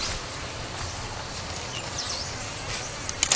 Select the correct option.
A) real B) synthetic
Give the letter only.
A